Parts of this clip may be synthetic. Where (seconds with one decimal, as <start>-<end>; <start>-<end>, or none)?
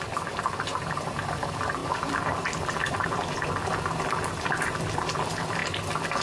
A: 0.0-5.6